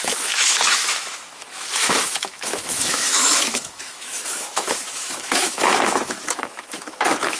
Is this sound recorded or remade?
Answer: remade